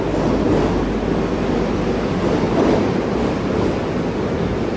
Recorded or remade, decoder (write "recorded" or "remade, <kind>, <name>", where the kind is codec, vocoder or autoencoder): recorded